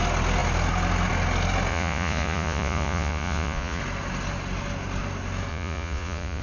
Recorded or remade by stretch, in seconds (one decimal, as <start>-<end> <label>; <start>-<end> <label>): 0.0-1.7 recorded; 1.7-3.8 remade; 3.8-5.5 recorded; 5.5-6.4 remade